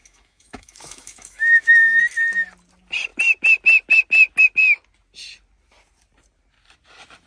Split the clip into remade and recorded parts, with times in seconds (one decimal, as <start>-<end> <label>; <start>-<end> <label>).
0.0-2.0 remade; 2.0-7.3 recorded